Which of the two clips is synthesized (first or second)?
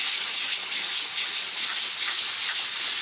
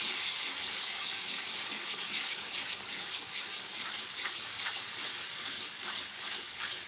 second